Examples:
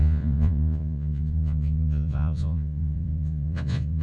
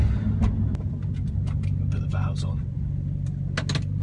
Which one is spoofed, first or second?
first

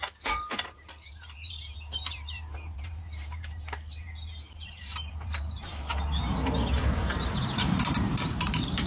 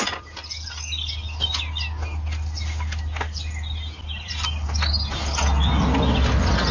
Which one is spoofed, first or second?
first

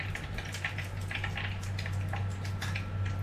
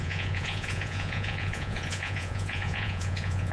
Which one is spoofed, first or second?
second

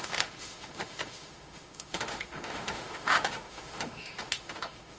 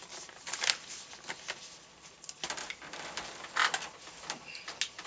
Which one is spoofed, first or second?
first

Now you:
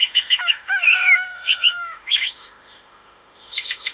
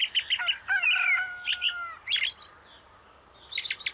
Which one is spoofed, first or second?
first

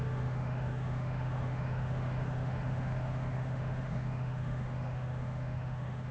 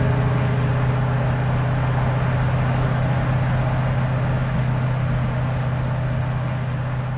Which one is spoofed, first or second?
first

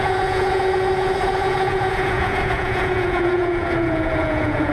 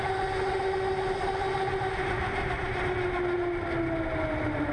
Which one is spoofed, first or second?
first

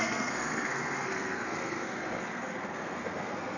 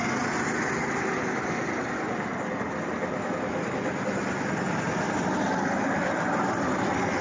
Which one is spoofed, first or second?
first